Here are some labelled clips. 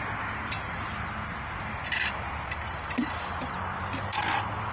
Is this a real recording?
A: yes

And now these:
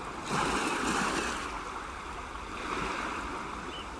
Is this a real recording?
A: yes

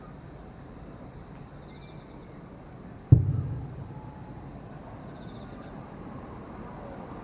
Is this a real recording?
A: yes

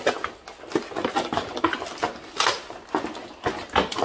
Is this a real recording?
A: yes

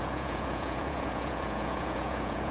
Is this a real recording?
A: no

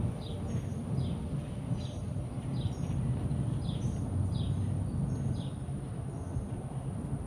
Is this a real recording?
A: yes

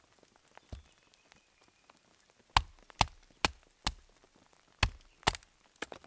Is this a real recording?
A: yes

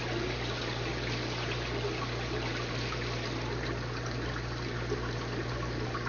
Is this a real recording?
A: yes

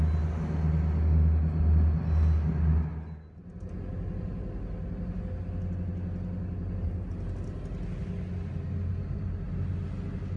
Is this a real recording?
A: yes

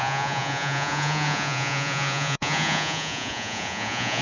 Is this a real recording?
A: no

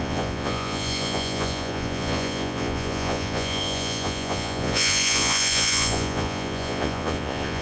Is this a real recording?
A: no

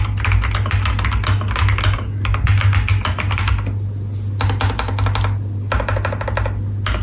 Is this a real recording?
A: yes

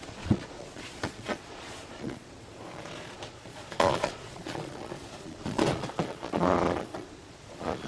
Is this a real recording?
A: no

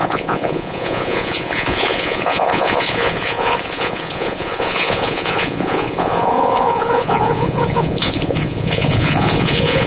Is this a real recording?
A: no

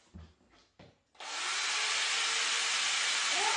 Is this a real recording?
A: yes